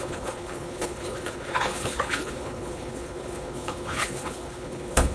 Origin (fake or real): fake